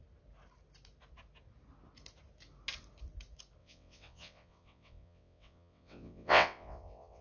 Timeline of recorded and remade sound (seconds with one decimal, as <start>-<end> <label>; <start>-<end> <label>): 0.0-3.6 recorded; 3.6-7.2 remade